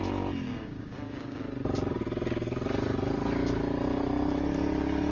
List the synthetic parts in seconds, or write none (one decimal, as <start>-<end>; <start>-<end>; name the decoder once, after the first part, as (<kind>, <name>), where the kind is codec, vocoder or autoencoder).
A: 0.5-1.4 (codec, DAC)

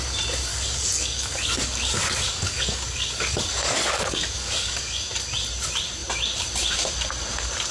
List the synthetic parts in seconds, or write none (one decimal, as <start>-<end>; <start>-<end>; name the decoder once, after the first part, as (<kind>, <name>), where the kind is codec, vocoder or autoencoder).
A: 0.5-5.1 (codec, DAC)